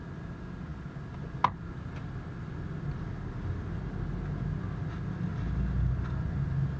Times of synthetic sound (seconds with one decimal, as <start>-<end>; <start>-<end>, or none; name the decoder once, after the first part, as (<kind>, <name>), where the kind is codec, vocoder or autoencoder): none